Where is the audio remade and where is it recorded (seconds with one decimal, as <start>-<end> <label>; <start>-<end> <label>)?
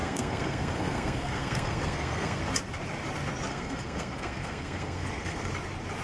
0.0-2.4 remade; 2.4-3.5 recorded; 3.5-5.5 remade; 5.5-6.0 recorded